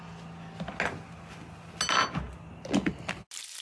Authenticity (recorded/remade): recorded